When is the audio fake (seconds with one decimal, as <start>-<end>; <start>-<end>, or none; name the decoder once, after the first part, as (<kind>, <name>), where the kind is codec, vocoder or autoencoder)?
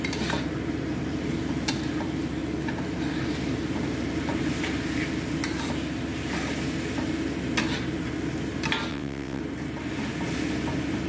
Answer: 8.9-9.4 (vocoder, WaveNeXt)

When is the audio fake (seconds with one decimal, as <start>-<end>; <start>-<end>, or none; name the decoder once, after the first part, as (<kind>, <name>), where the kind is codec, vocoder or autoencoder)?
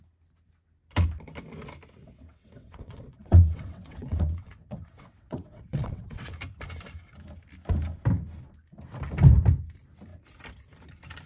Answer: 2.0-6.3 (vocoder, WaveNeXt)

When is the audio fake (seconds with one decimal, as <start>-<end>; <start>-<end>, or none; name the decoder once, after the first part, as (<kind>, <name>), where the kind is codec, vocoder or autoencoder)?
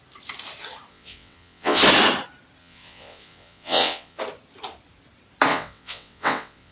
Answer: 0.9-1.8 (vocoder, WaveNeXt); 2.6-4.2; 5.5-6.7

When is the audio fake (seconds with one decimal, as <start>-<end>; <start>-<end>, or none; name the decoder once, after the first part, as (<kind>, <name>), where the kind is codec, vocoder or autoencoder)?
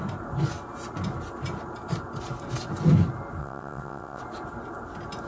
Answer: 3.4-4.2 (vocoder, WaveNeXt)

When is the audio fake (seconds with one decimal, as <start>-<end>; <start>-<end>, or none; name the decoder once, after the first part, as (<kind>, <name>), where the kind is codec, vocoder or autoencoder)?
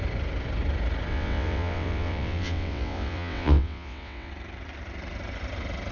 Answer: 1.1-4.3 (vocoder, WaveNeXt)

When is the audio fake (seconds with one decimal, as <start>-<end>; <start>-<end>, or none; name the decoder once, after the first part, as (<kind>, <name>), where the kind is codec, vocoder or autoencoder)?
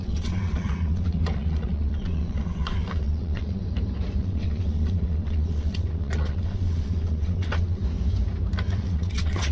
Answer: 0.0-3.6 (vocoder, WaveNeXt); 4.2-7.8; 8.7-9.5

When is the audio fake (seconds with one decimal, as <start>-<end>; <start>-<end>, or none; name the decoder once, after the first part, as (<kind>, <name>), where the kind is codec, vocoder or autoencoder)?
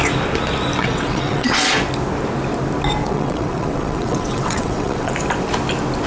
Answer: 0.8-1.6 (vocoder, WaveNeXt); 3.0-5.1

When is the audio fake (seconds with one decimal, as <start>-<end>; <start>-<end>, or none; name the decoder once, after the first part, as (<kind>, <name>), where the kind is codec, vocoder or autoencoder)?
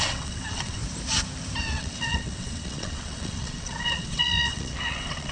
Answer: 0.0-0.8 (vocoder, WaveNeXt); 1.6-5.3